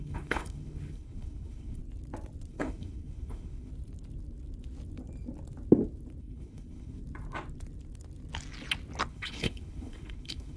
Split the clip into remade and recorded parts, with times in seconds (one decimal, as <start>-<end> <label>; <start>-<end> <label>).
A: 0.0-1.8 remade; 1.8-2.5 recorded; 2.5-3.7 remade; 3.7-6.2 recorded; 6.2-7.0 remade; 7.0-9.1 recorded; 9.1-10.6 remade